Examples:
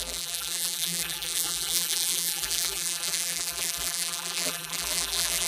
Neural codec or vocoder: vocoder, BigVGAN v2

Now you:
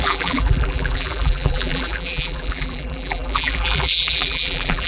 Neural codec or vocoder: vocoder, BigVGAN v2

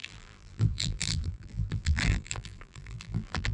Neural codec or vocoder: vocoder, BigVGAN v2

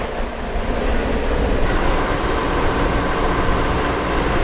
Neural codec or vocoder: none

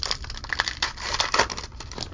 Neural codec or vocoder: none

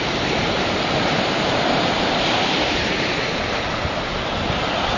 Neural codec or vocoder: vocoder, BigVGAN v2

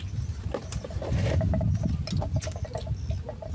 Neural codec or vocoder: none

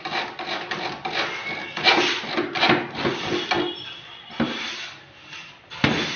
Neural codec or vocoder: none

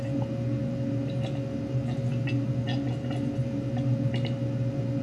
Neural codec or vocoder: none